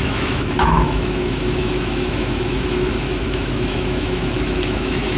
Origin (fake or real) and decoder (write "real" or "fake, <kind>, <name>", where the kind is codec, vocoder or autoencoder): fake, autoencoder, DAC-VAE